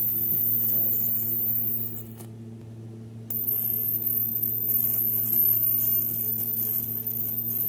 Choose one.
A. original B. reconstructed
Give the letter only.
A